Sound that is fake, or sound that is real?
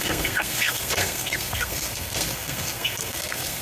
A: fake